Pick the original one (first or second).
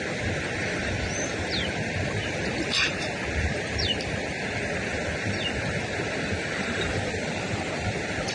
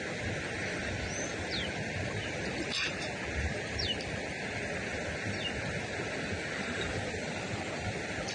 second